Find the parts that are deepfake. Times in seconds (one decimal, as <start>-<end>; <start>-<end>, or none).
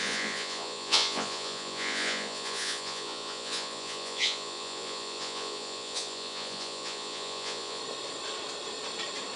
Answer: 0.0-7.8